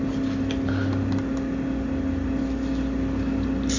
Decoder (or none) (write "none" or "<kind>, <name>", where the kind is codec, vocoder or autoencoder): none